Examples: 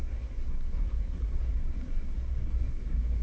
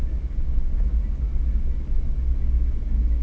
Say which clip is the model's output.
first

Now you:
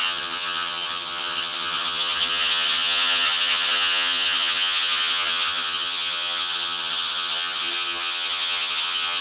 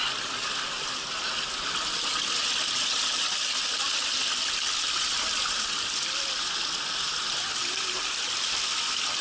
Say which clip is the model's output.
first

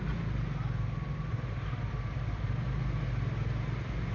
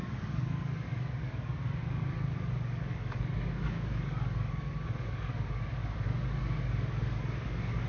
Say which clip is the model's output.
second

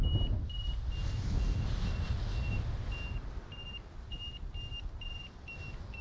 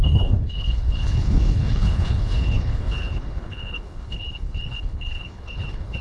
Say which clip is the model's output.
second